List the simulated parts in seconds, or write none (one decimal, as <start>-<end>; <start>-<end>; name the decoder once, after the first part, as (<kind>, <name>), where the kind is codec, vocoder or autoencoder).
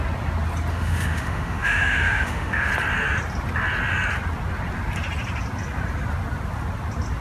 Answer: 0.7-2.7 (autoencoder, DAC-VAE)